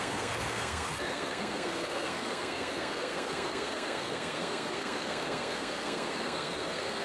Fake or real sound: fake